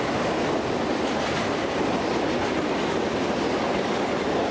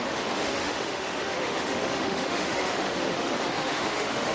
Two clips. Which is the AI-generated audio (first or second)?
second